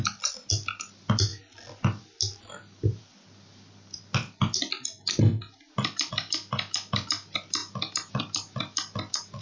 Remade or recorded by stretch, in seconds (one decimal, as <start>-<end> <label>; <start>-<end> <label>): 0.0-9.4 recorded

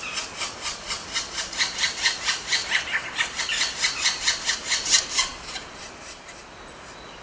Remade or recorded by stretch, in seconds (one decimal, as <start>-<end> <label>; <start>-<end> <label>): 0.0-1.0 recorded; 1.0-3.4 remade; 3.4-7.2 recorded

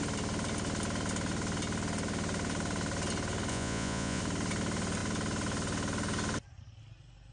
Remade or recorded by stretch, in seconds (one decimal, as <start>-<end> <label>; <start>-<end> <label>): 0.0-3.5 recorded; 3.5-4.2 remade; 4.2-7.3 recorded

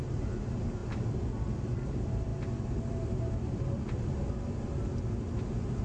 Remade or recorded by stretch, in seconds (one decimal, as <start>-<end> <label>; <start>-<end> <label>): 0.0-5.8 recorded

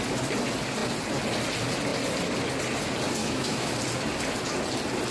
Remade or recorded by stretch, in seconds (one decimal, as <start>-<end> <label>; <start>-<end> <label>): 0.0-3.2 recorded; 3.2-3.7 remade; 3.7-5.1 recorded

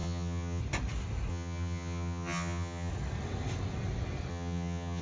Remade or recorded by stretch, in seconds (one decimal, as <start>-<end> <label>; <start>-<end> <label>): 0.0-0.6 remade; 0.6-1.3 recorded; 1.3-2.9 remade; 2.9-4.3 recorded; 4.3-5.0 remade